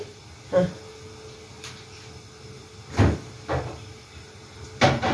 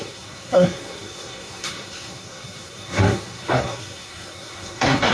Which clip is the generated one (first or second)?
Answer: second